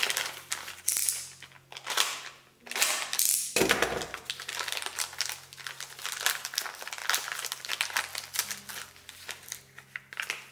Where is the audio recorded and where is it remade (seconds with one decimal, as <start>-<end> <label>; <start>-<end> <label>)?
0.0-10.5 recorded